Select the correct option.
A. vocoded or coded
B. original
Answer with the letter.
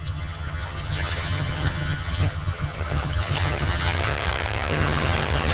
A